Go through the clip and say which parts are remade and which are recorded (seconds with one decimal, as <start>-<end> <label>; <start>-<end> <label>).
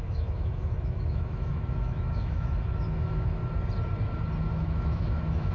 0.0-3.4 remade; 3.4-4.4 recorded; 4.4-5.5 remade